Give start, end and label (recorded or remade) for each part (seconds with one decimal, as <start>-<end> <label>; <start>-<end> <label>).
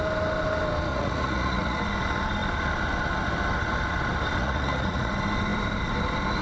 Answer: 0.0-0.9 recorded; 0.9-1.8 remade; 1.8-4.4 recorded; 4.4-5.1 remade; 5.1-6.4 recorded